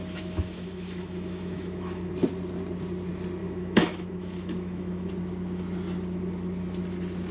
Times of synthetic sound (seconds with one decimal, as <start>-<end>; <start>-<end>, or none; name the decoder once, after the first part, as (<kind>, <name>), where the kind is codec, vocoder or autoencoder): 0.0-2.1 (autoencoder, DAC-VAE); 3.4-5.1